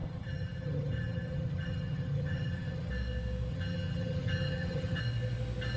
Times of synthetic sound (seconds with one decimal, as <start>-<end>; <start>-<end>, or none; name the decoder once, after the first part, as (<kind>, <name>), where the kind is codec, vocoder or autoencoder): 0.0-2.9 (vocoder, HiFi-GAN); 3.5-5.0